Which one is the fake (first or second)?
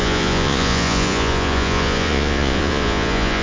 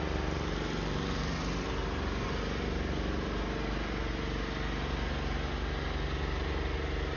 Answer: first